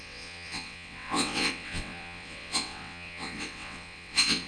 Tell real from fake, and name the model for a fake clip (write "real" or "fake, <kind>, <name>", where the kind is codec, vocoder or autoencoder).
fake, vocoder, WaveNeXt